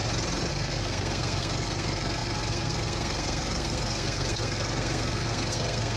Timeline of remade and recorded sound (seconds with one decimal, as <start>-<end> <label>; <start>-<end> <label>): 0.0-0.5 recorded; 0.5-6.0 remade